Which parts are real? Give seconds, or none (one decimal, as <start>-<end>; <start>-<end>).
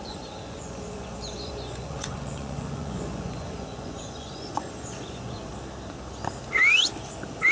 5.5-7.5